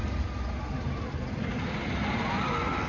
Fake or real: real